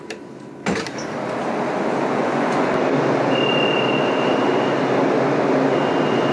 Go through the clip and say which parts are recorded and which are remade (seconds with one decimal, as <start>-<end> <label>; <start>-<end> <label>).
0.0-2.2 recorded; 2.2-2.7 remade; 2.7-6.3 recorded